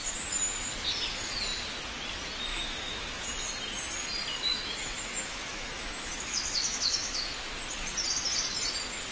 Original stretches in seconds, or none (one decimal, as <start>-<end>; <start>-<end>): 0.0-2.5; 3.3-4.5; 7.2-9.1